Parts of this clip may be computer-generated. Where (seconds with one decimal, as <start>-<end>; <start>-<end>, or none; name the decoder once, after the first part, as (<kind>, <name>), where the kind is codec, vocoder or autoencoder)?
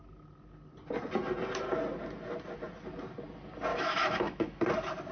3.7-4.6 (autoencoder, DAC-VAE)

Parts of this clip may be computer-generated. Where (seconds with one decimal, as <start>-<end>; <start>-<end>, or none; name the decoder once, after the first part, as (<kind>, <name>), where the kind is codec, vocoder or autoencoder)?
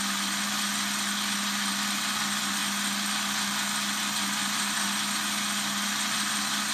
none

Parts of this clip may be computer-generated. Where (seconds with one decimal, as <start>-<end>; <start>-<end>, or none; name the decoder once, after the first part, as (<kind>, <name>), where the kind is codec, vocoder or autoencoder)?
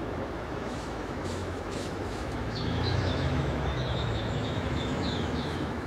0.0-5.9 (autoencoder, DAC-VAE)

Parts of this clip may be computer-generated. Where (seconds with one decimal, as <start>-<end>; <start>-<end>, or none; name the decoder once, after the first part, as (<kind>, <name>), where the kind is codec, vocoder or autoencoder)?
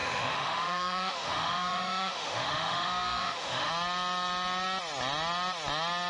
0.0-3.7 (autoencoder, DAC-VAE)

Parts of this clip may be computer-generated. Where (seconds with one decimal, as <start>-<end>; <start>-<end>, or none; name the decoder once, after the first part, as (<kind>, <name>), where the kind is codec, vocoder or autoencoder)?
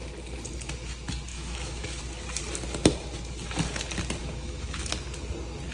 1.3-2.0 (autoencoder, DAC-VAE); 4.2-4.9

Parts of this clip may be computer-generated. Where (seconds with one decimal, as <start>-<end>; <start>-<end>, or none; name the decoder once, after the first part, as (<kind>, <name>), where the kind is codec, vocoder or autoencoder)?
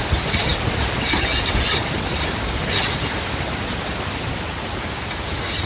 none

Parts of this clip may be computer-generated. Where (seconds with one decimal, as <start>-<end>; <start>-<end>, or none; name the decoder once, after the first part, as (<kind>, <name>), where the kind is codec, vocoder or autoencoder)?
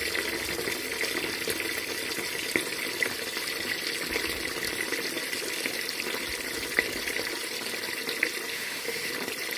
8.5-9.1 (autoencoder, DAC-VAE)